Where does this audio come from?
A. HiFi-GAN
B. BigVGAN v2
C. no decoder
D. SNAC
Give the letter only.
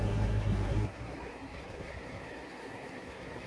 D